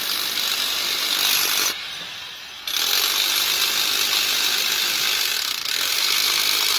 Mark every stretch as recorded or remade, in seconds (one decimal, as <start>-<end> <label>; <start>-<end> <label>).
0.0-6.8 recorded